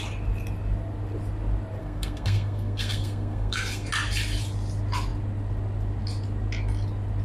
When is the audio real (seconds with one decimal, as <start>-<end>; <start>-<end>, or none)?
0.0-1.8; 3.9-7.2